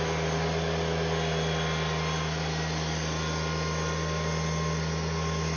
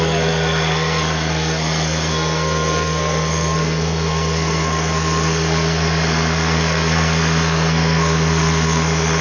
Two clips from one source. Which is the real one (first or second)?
first